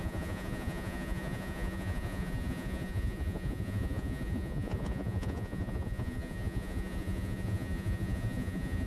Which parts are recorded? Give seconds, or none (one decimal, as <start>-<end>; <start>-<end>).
none